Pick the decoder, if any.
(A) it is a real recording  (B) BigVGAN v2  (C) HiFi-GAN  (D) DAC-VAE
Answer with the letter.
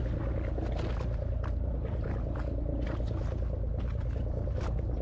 A